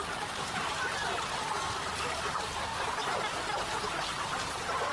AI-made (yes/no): no